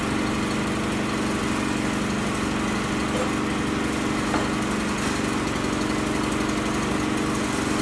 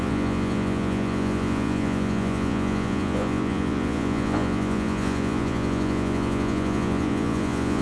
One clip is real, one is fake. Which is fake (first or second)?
second